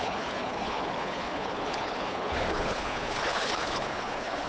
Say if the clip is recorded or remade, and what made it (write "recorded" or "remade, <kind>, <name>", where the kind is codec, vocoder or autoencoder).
remade, codec, HILCodec